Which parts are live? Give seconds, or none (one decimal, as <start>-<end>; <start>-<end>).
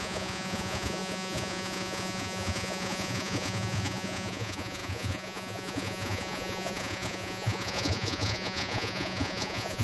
none